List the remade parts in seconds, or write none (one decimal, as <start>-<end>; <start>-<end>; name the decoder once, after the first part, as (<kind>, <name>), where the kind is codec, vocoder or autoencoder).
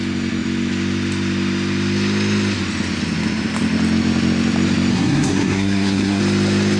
4.9-6.2 (codec, SNAC)